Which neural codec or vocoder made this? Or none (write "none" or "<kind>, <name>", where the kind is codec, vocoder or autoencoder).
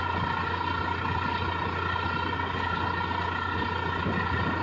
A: none